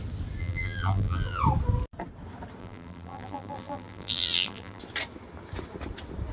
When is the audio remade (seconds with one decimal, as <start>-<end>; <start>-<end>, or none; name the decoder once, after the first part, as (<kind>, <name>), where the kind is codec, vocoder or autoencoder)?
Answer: 0.4-1.4 (vocoder, BigVGAN v2); 2.6-4.8

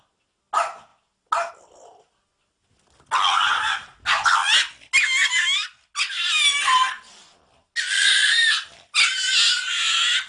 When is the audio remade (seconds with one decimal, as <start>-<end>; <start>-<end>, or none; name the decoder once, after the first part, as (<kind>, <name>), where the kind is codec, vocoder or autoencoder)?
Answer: none

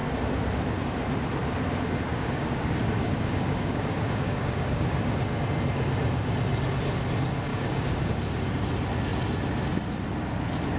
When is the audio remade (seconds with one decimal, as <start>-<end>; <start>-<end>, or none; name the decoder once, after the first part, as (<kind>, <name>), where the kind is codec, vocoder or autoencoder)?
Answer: 2.1-5.4 (codec, DAC); 7.5-8.1

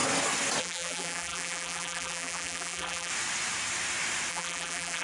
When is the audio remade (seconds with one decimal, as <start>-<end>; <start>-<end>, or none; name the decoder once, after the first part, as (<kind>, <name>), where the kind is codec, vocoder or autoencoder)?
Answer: 0.6-3.1 (vocoder, BigVGAN v2); 4.3-5.0